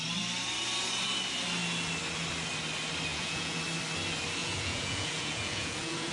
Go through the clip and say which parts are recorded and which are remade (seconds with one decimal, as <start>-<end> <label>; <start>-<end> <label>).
0.0-3.1 recorded; 3.1-3.6 remade; 3.6-4.4 recorded; 4.4-6.1 remade